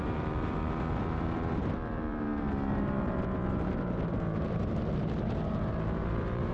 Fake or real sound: fake